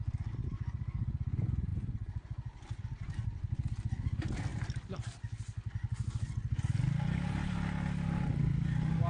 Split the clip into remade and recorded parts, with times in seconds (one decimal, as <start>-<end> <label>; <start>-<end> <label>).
0.0-9.1 recorded